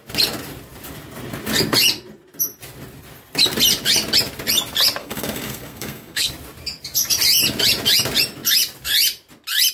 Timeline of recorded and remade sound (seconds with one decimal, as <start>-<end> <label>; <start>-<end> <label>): 0.0-5.0 recorded; 5.0-6.3 remade; 6.3-9.7 recorded